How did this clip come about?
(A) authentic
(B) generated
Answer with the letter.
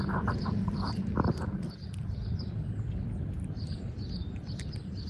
B